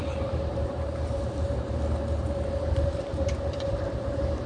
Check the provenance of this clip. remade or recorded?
recorded